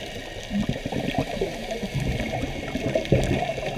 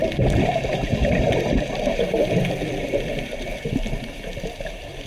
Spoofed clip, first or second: second